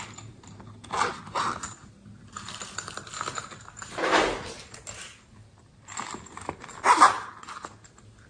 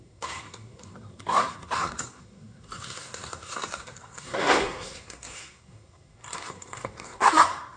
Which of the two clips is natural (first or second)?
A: first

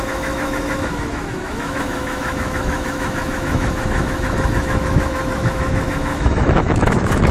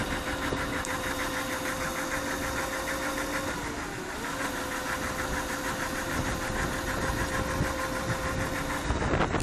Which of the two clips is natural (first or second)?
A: second